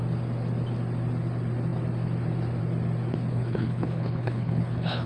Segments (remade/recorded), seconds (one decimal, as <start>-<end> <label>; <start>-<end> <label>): 0.0-3.3 recorded; 3.3-5.1 remade